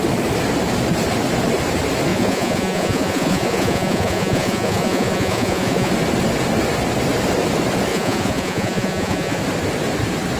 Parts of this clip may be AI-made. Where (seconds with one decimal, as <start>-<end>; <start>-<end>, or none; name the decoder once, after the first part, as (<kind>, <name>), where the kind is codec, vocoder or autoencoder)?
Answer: 2.1-5.9 (vocoder, Vocos); 7.9-9.4